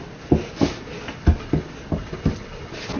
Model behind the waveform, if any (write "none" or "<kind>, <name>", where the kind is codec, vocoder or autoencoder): none